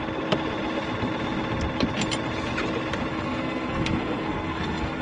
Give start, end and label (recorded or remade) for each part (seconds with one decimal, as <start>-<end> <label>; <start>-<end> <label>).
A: 0.0-3.1 recorded; 3.1-5.0 remade